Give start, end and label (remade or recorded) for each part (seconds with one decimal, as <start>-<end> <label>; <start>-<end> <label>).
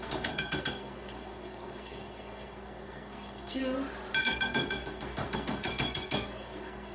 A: 0.0-3.6 remade; 3.6-4.2 recorded; 4.2-6.9 remade